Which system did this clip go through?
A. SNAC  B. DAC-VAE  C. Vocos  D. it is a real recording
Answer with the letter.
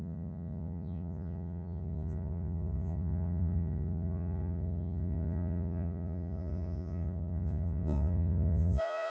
C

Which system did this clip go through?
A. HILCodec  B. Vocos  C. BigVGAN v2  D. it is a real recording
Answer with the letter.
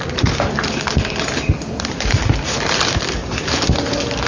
D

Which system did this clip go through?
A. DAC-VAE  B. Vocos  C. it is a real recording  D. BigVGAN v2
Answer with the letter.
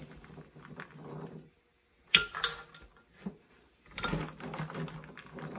C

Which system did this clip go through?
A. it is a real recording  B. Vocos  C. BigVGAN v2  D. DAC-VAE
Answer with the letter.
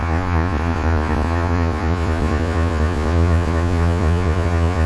B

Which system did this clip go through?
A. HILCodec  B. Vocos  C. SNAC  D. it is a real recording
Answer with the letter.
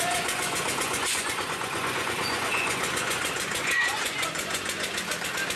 B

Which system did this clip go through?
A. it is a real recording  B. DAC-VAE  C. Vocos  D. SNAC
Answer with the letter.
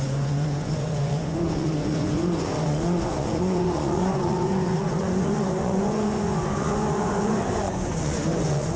C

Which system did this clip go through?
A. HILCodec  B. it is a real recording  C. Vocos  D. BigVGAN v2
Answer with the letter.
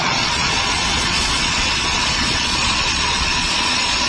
C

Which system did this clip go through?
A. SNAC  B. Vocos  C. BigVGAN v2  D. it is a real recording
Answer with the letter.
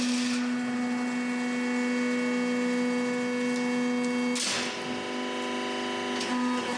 D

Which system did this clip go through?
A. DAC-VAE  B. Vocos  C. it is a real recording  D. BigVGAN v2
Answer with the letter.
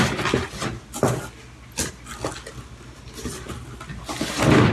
C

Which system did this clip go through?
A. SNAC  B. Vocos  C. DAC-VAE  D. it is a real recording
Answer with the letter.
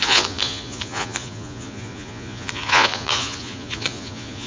B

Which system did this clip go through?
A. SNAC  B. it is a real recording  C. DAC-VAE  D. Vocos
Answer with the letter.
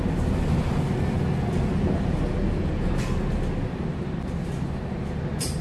B